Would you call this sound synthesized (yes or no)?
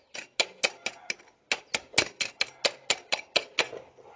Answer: no